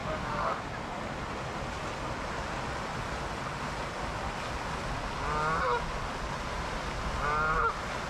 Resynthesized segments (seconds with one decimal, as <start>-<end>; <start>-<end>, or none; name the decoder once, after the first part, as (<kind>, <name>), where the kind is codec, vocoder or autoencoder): 0.0-0.6 (autoencoder, DAC-VAE)